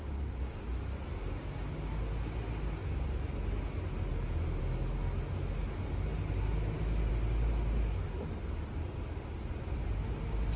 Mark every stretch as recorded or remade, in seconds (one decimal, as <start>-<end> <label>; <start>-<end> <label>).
0.0-10.6 recorded